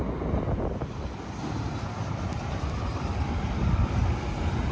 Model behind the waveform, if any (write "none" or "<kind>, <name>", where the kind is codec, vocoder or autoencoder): none